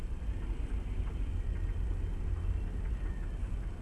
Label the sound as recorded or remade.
recorded